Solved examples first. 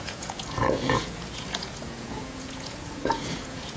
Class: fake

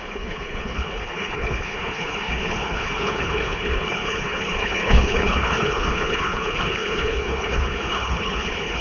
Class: fake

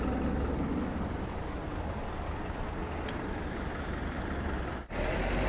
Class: real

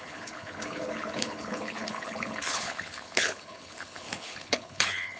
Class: fake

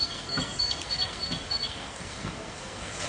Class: fake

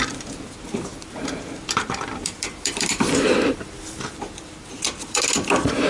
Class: fake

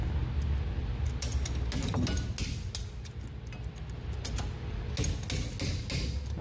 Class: real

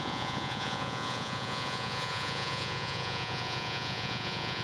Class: fake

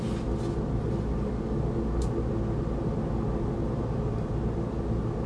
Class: real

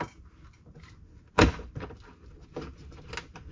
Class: real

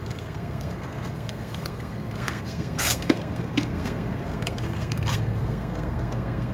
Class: fake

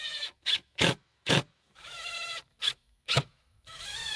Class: fake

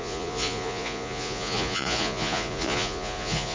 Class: fake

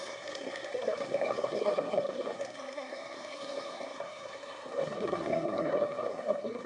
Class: fake